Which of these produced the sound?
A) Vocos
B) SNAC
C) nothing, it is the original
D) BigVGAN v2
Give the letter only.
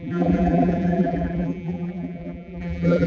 D